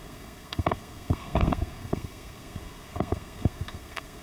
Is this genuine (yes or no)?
no